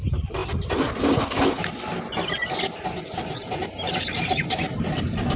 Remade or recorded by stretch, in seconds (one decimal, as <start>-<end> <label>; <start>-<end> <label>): 0.0-0.4 remade; 0.4-3.6 recorded; 3.6-5.4 remade